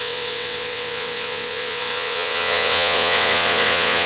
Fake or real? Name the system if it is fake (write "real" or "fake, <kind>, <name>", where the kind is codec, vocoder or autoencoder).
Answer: fake, vocoder, WaveNeXt